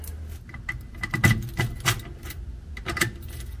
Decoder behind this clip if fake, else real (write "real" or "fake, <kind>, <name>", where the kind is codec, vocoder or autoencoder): real